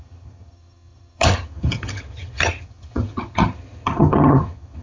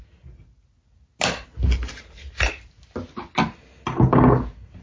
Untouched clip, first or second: second